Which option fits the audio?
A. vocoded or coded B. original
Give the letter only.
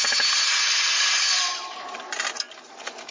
B